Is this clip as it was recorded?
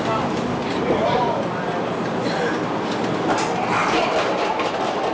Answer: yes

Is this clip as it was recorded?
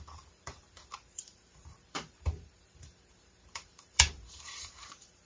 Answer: no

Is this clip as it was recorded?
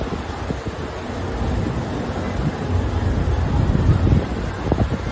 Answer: yes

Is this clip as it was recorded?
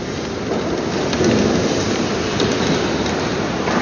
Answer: no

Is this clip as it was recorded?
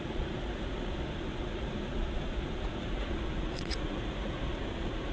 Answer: no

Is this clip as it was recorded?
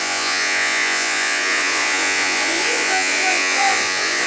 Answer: no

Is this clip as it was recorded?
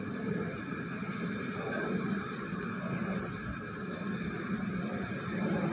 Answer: yes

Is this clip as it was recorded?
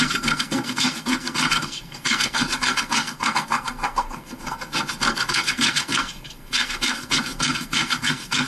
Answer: no